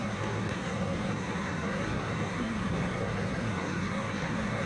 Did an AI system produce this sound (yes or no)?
yes